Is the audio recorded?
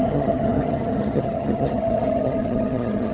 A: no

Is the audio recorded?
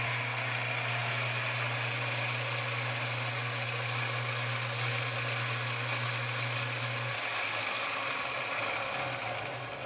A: yes